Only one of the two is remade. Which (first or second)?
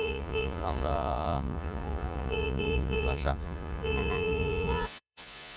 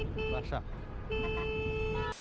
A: first